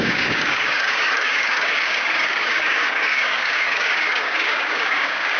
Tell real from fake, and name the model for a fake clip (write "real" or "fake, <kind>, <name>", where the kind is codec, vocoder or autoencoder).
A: fake, codec, DAC